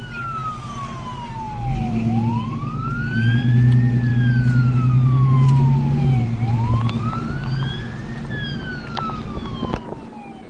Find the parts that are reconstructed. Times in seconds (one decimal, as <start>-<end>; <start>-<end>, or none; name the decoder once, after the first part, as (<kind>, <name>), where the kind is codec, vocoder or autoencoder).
none